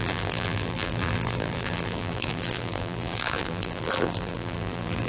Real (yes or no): no